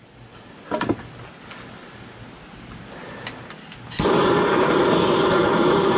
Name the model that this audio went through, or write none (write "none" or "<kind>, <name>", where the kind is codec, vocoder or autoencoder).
none